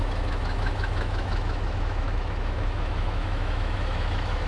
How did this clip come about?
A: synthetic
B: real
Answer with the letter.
A